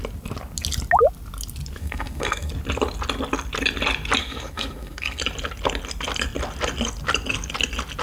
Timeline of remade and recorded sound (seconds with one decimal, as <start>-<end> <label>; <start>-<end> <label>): 0.0-1.8 recorded; 1.8-2.5 remade; 2.5-4.2 recorded; 4.2-5.2 remade; 5.2-8.0 recorded